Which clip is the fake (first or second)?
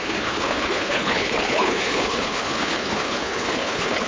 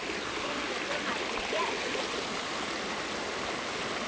first